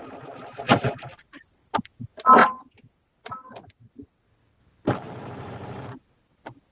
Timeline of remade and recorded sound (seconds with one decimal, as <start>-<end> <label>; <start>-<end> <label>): 0.0-6.7 recorded